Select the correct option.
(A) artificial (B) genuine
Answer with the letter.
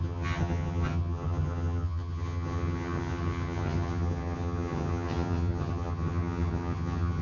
A